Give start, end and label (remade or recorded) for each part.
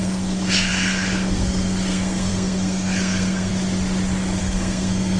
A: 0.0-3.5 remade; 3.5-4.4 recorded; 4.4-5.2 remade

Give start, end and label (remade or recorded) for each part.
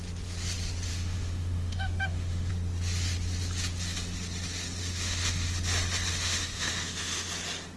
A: 0.0-0.9 recorded; 0.9-2.5 remade; 2.5-4.8 recorded; 4.8-5.5 remade; 5.5-6.1 recorded; 6.1-7.3 remade; 7.3-7.8 recorded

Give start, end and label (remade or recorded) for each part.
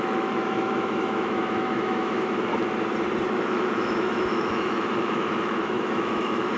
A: 0.0-2.5 remade; 2.5-3.3 recorded; 3.3-6.6 remade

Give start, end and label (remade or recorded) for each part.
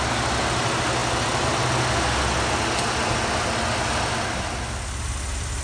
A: 0.0-5.6 recorded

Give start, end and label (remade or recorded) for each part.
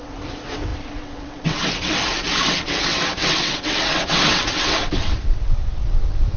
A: 0.0-6.4 remade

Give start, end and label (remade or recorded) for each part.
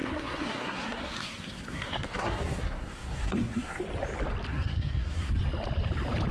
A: 0.0-3.8 remade; 3.8-4.5 recorded; 4.5-5.3 remade; 5.3-6.3 recorded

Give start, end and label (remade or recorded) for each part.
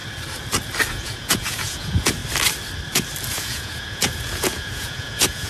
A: 0.0-0.9 recorded; 0.9-2.2 remade; 2.2-3.3 recorded; 3.3-5.5 remade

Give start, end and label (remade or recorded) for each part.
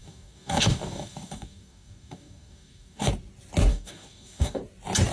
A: 0.0-3.1 remade; 3.1-3.7 recorded; 3.7-4.6 remade; 4.6-5.1 recorded